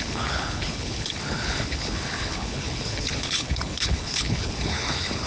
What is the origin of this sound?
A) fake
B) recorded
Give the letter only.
A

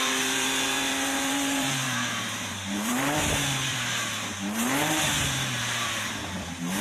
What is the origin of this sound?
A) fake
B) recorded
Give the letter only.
A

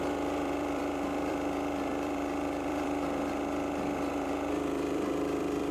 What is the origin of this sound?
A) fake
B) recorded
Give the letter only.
A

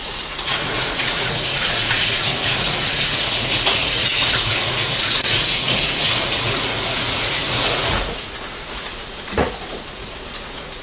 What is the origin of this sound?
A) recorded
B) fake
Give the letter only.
B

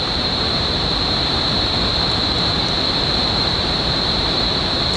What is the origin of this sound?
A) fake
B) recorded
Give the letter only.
A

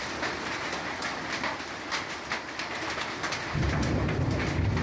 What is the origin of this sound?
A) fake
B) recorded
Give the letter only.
B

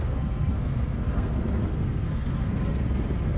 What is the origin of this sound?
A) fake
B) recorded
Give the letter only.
A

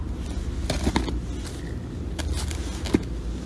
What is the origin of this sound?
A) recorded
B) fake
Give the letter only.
A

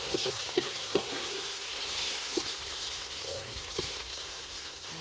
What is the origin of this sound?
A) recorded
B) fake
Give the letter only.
B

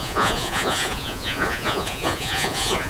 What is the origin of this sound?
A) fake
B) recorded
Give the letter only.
A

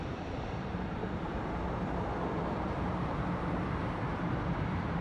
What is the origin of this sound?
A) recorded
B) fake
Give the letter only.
B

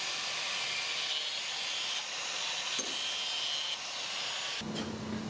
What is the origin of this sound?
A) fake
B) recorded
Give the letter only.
B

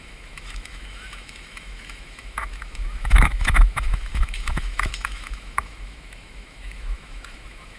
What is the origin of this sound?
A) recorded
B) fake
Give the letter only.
B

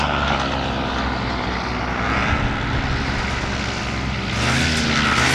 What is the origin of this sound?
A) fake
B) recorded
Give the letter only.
B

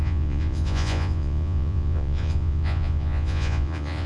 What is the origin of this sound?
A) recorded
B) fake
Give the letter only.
B